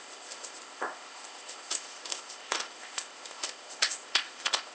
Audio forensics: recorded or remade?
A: remade